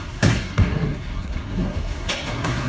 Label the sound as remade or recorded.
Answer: remade